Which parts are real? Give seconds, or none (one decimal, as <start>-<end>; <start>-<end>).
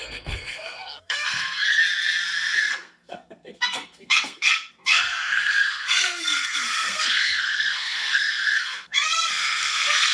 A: 1.8-2.6